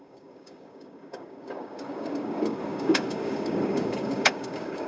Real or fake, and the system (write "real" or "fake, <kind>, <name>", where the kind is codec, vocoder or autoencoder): fake, codec, DAC